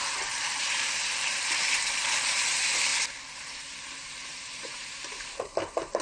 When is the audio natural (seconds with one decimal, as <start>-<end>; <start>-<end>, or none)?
2.9-4.1